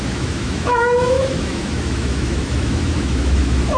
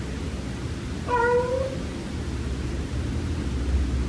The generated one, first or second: first